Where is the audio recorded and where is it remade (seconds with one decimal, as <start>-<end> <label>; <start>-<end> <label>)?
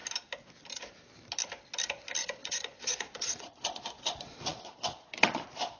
0.0-2.2 recorded; 2.2-5.8 remade